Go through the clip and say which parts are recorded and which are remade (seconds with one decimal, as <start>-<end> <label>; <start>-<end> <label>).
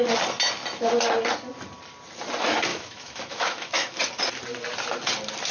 0.0-2.7 recorded; 2.7-4.0 remade; 4.0-5.5 recorded